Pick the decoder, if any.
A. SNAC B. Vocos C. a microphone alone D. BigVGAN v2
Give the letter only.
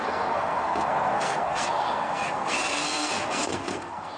A